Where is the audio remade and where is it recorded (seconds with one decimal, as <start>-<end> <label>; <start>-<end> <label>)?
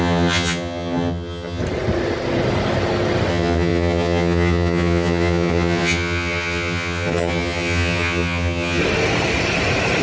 0.0-1.6 remade; 1.6-3.3 recorded; 3.3-8.8 remade; 8.8-10.0 recorded